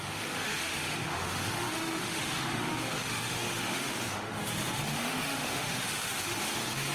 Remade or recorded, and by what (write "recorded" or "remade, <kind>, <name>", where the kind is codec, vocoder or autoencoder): remade, autoencoder, DAC-VAE